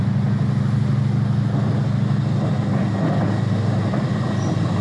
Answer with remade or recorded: recorded